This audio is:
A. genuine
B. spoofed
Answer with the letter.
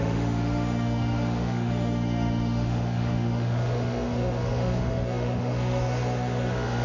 B